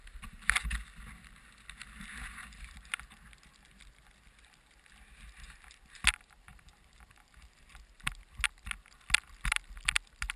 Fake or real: real